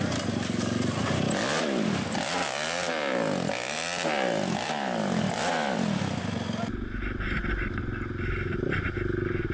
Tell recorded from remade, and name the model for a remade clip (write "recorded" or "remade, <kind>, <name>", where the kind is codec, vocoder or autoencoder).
recorded